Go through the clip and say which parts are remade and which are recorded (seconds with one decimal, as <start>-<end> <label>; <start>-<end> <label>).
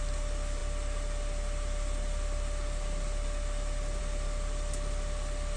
0.0-5.6 recorded